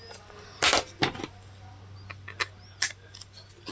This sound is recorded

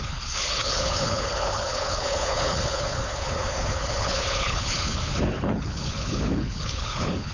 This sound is remade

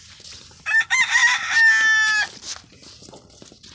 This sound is recorded